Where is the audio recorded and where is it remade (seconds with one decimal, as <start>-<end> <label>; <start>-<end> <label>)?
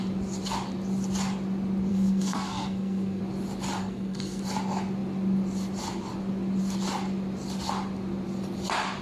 0.0-1.9 recorded; 1.9-3.2 remade; 3.2-3.8 recorded; 3.8-4.4 remade; 4.4-9.0 recorded